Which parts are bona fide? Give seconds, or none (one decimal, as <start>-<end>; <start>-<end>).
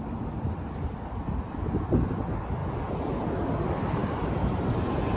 2.6-3.5